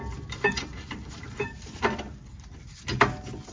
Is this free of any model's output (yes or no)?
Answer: yes